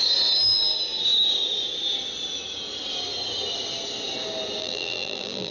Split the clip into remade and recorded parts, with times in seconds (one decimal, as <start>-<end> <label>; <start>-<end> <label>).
0.0-4.6 recorded; 4.6-5.5 remade